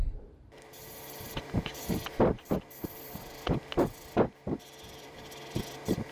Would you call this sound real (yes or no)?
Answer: no